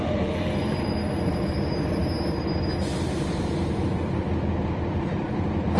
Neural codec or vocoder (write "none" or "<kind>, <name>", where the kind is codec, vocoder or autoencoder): none